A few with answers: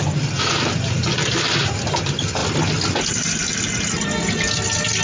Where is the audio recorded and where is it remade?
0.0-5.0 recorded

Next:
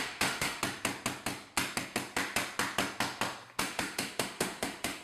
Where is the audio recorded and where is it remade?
0.0-0.6 remade; 0.6-3.6 recorded; 3.6-5.0 remade

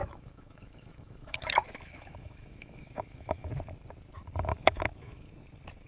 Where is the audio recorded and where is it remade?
0.0-3.5 remade; 3.5-4.5 recorded; 4.5-5.3 remade; 5.3-5.9 recorded